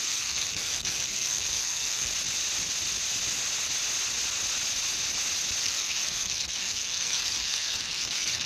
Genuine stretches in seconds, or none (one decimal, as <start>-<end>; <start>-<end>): 2.1-5.6